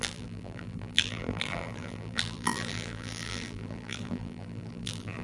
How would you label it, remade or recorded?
remade